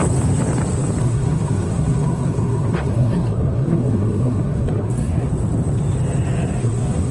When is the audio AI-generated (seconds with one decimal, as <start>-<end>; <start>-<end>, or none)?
1.0-5.3; 6.6-7.1